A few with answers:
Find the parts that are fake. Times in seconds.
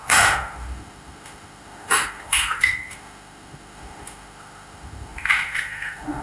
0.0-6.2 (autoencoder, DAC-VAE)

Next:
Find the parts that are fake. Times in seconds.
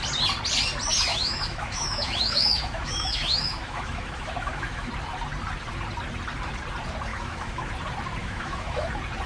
1.1-4.9 (autoencoder, DAC-VAE); 7.1-7.7; 8.2-8.9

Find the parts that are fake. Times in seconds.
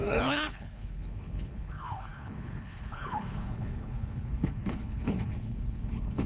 0.0-6.3 (codec, HILCodec)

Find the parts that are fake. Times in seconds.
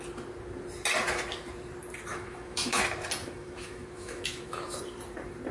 2.1-2.8 (autoencoder, DAC-VAE); 3.2-4.8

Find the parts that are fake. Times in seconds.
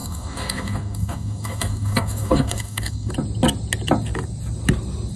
0.0-3.1 (codec, DAC)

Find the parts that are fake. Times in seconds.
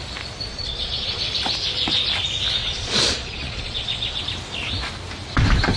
0.5-1.2 (vocoder, Vocos); 2.6-4.2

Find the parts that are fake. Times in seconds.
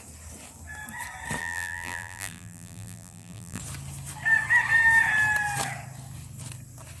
1.4-3.6 (vocoder, BigVGAN v2)